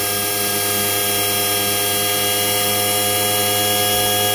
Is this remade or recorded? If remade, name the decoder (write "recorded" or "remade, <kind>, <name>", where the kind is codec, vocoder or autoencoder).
recorded